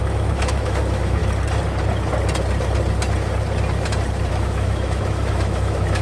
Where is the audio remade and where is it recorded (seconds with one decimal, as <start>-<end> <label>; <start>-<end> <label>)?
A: 0.0-1.2 remade; 1.2-4.3 recorded; 4.3-6.0 remade